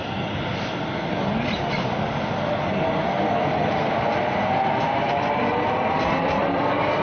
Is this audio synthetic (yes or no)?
no